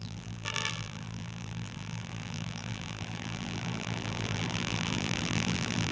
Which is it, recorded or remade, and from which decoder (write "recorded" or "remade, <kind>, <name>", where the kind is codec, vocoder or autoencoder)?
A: remade, vocoder, BigVGAN v2